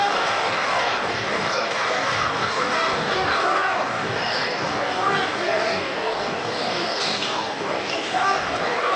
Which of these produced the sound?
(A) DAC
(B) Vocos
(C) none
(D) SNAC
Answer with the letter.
A